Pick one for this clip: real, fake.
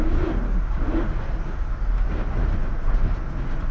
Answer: real